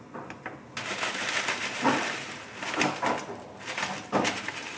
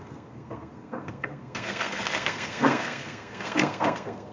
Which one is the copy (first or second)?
second